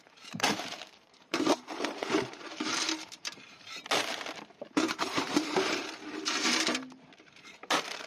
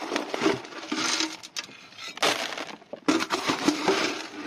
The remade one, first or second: first